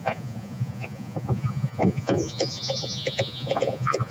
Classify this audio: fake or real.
fake